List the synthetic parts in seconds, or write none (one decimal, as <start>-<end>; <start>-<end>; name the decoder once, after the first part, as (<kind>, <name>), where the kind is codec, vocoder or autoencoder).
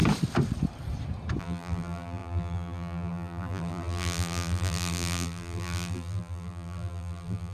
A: 1.4-7.5 (vocoder, BigVGAN v2)